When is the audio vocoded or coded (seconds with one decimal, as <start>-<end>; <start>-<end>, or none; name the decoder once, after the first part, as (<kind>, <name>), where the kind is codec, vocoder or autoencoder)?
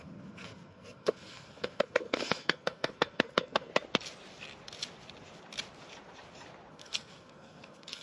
0.0-3.7 (codec, SNAC); 6.7-8.0